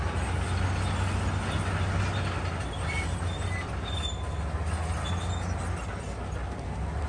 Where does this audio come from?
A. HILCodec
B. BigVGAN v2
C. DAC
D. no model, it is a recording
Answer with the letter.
D